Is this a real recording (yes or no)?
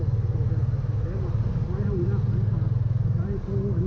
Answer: yes